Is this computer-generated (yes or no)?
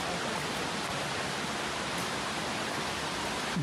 no